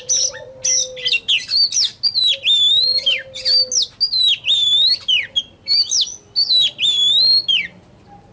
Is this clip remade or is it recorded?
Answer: recorded